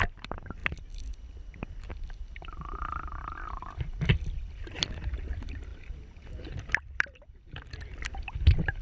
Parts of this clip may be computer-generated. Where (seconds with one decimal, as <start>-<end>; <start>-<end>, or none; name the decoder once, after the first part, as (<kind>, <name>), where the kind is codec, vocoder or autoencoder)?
0.0-0.6 (vocoder, BigVGAN v2); 1.7-8.8